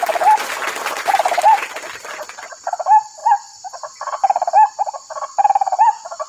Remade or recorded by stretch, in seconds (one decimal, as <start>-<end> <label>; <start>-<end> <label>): 0.0-6.3 recorded